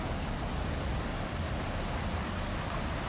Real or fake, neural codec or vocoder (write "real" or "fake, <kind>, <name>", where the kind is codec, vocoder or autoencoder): real